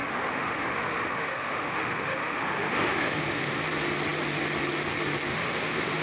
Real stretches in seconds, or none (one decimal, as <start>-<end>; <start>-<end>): 3.6-5.3